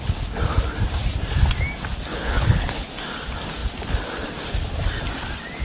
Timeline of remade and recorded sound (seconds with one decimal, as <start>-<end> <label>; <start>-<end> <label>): 0.0-2.1 recorded; 2.1-2.9 remade; 2.9-5.6 recorded